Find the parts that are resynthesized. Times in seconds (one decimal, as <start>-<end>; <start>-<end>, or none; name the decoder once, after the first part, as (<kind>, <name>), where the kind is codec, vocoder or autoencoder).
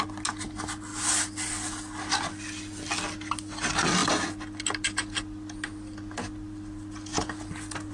none